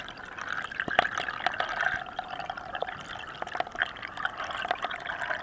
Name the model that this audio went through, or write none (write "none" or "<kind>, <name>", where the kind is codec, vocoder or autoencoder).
none